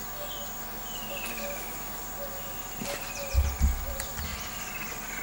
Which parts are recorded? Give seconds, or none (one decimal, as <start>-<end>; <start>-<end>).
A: 0.0-2.6; 3.9-4.3